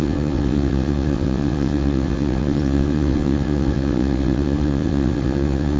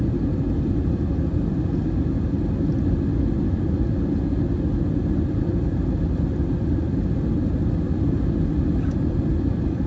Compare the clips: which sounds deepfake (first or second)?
first